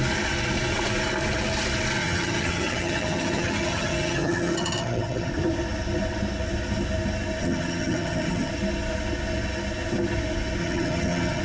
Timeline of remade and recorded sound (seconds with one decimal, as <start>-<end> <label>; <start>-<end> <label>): 0.0-2.0 recorded; 2.0-5.3 remade; 5.3-7.4 recorded; 7.4-8.5 remade; 8.5-10.6 recorded; 10.6-11.4 remade